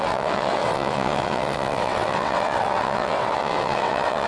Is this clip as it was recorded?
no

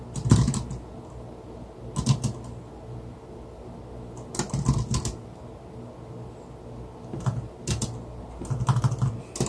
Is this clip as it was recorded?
yes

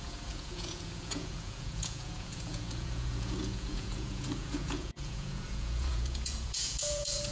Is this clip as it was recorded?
no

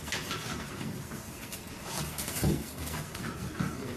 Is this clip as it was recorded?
no